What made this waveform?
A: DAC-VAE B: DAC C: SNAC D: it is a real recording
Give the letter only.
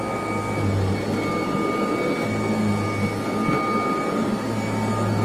D